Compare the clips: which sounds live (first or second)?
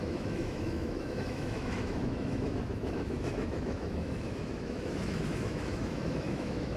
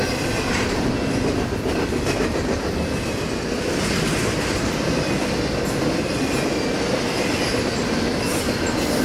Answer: second